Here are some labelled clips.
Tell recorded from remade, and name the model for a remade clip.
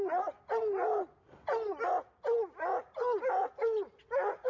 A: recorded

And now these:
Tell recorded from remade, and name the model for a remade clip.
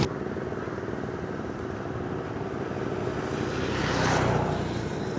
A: recorded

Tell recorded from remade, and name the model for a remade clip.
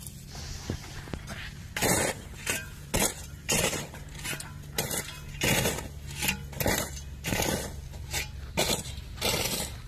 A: recorded